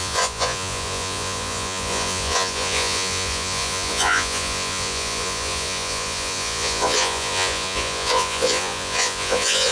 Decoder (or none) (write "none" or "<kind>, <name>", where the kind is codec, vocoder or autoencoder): vocoder, Vocos